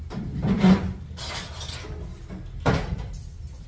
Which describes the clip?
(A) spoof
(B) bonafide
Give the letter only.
B